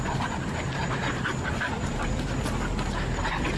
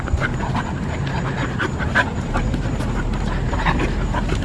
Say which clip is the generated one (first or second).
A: second